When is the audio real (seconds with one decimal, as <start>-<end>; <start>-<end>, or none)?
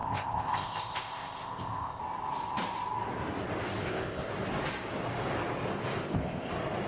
2.0-3.8; 4.3-6.0; 6.5-6.9